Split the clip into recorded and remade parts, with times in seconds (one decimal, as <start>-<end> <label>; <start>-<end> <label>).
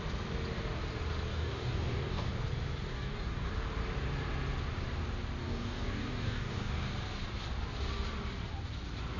0.0-1.3 recorded; 1.3-2.3 remade; 2.3-2.9 recorded; 2.9-3.5 remade; 3.5-5.4 recorded; 5.4-6.9 remade; 6.9-9.2 recorded